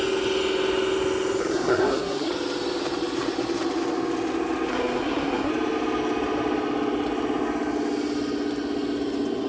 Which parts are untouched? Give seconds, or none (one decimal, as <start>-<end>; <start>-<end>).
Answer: 0.0-1.4; 2.3-4.7; 5.5-9.5